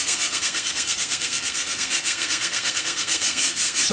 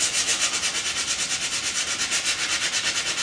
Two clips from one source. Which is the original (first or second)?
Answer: second